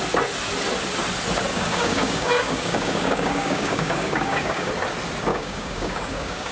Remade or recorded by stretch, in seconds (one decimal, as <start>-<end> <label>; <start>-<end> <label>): 0.0-1.5 recorded; 1.5-4.7 remade; 4.7-5.3 recorded; 5.3-6.5 remade